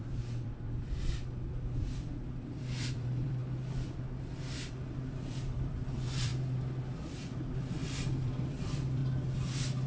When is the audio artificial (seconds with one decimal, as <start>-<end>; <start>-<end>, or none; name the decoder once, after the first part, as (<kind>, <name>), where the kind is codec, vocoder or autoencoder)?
0.0-3.4 (vocoder, BigVGAN v2); 4.7-6.3; 8.2-9.0